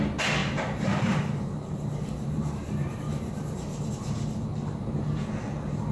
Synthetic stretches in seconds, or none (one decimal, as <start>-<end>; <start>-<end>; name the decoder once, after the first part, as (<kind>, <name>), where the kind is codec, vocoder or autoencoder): 0.4-3.9 (vocoder, BigVGAN v2)